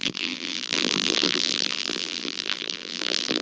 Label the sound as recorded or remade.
remade